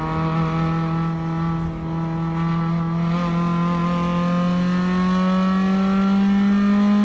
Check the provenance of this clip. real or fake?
real